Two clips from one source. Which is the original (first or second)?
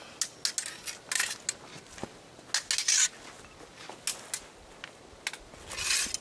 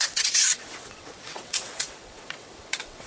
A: first